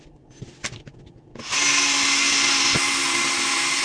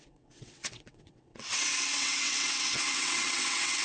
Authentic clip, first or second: first